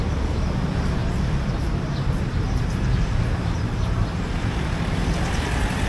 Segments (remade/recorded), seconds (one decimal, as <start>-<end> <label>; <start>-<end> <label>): 0.0-5.9 remade

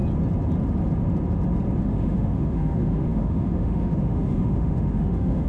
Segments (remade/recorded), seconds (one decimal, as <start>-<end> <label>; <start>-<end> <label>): 0.0-1.8 recorded; 1.8-5.5 remade

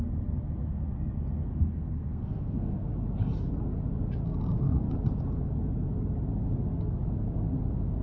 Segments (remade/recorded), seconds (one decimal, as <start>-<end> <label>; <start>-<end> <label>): 0.0-1.5 recorded; 1.5-2.9 remade; 2.9-8.0 recorded

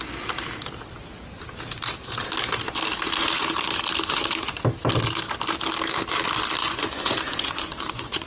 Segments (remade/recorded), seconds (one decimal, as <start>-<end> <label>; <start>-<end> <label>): 0.0-6.6 recorded; 6.6-8.3 remade

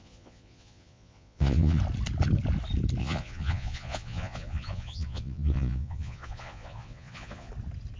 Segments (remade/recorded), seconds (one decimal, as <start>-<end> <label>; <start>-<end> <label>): 0.0-1.8 remade; 1.8-3.0 recorded; 3.0-7.5 remade; 7.5-8.0 recorded

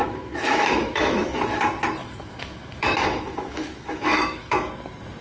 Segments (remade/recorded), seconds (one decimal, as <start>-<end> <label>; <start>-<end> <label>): 0.0-1.6 remade; 1.6-2.0 recorded; 2.0-4.7 remade; 4.7-5.2 recorded